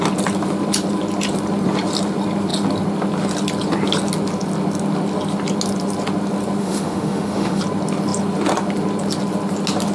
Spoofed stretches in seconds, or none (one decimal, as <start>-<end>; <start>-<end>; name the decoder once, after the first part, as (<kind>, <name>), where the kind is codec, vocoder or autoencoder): 6.6-7.6 (autoencoder, DAC-VAE)